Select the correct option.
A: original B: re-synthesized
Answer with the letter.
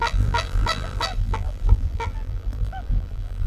B